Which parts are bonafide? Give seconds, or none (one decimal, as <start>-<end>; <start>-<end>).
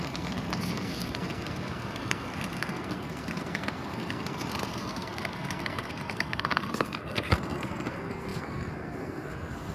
none